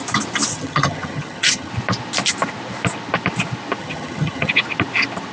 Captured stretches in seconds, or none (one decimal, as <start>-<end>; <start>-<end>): 0.0-0.5; 1.7-3.8; 4.5-5.3